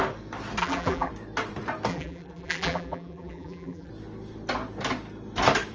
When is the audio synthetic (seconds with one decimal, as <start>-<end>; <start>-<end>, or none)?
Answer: 0.6-1.1; 1.9-3.9